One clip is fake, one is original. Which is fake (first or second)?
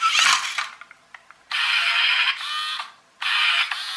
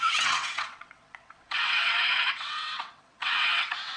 second